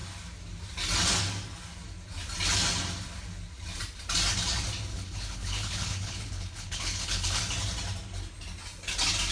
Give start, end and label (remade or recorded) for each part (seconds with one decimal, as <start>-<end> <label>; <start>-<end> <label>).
0.0-4.9 recorded; 4.9-7.4 remade; 7.4-9.3 recorded